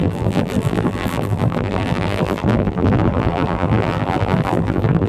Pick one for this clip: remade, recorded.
remade